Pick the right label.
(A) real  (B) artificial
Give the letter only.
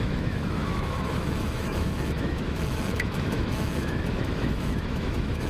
B